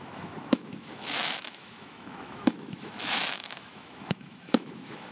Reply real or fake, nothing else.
fake